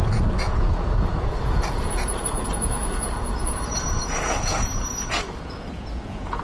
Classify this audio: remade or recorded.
remade